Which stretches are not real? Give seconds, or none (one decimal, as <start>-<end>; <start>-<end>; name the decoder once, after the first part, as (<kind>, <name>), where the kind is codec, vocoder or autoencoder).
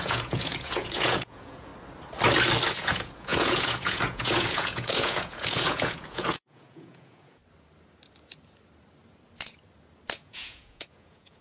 0.0-1.7 (vocoder, Vocos); 2.7-7.4; 10.2-11.4